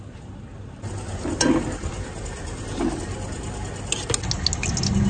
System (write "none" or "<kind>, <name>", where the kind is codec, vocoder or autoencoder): none